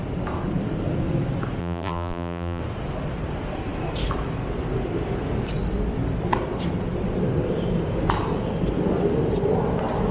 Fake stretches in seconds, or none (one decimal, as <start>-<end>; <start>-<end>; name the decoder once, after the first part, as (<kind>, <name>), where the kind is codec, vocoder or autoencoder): 1.6-2.6 (vocoder, BigVGAN v2)